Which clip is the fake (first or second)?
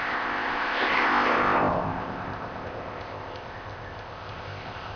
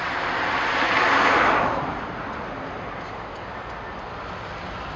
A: first